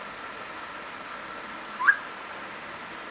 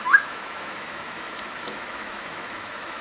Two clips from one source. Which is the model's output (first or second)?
second